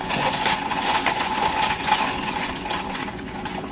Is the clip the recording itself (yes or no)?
no